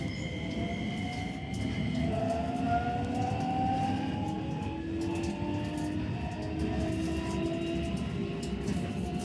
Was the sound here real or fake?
real